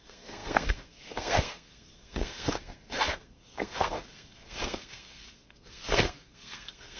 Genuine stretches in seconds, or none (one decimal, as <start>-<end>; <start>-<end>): none